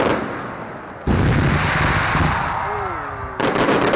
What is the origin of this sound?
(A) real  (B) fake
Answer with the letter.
A